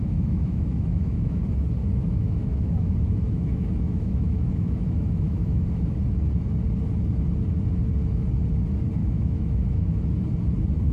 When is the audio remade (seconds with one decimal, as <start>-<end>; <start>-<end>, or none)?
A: 0.0-1.4; 1.8-6.0; 9.0-10.0